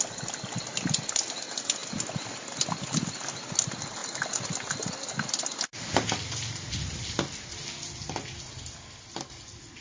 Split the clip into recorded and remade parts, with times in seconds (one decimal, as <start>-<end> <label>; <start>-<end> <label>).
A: 0.0-9.8 recorded